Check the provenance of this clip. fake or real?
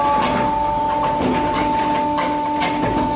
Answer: real